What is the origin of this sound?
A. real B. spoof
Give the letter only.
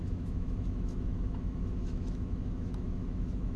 B